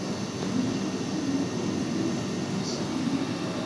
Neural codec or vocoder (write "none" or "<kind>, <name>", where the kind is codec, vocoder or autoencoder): none